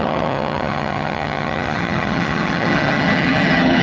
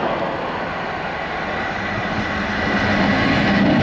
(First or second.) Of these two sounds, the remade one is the first